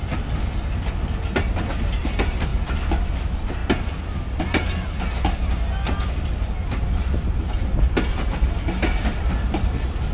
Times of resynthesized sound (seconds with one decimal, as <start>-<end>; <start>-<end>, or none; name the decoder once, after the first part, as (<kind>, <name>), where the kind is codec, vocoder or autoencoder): none